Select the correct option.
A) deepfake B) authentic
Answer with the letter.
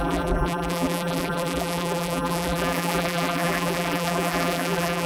A